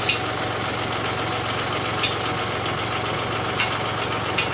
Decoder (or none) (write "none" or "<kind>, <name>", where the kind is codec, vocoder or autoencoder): none